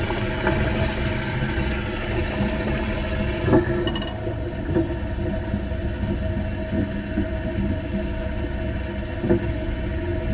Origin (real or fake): real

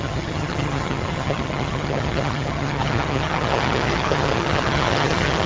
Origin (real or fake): fake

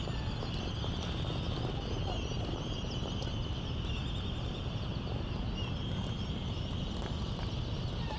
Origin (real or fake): real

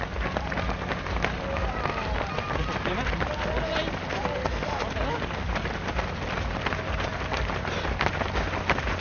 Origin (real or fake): real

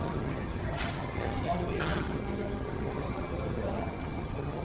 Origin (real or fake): fake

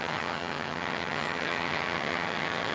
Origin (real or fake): fake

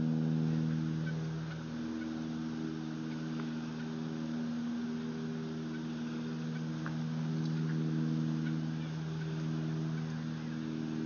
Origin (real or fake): real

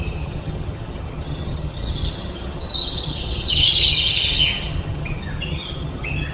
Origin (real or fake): fake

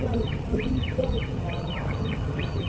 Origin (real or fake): fake